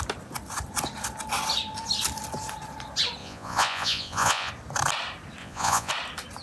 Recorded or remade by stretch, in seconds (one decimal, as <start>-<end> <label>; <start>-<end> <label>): 0.0-3.2 recorded; 3.2-4.5 remade; 4.5-5.4 recorded; 5.4-5.9 remade; 5.9-6.4 recorded